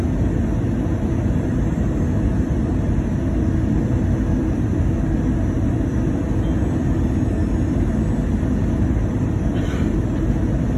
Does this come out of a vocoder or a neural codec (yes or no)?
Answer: no